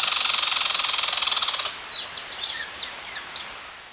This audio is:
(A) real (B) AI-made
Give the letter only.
A